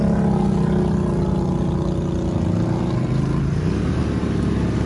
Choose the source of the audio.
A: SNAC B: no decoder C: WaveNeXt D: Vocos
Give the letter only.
B